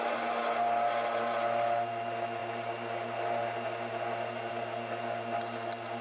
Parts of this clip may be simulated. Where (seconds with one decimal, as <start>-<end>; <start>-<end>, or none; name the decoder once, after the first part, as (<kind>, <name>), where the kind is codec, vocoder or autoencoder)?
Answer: none